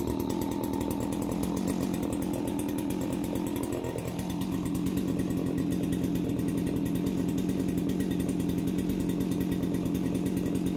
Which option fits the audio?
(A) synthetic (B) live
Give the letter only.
B